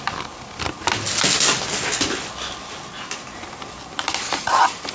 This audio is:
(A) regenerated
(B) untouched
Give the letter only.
B